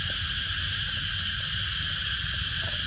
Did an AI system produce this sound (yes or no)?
no